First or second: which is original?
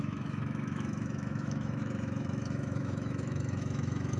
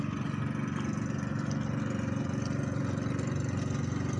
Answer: second